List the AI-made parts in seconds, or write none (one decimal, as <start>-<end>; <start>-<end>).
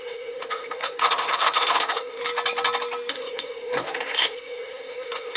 0.0-2.2; 3.1-5.4